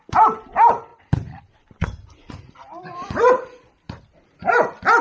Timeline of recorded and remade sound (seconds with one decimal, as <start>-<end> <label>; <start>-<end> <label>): 0.0-5.0 recorded